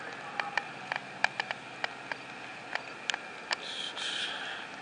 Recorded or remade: recorded